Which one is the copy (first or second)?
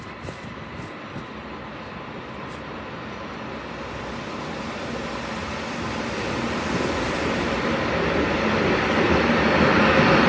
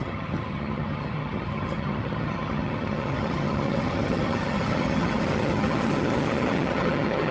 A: second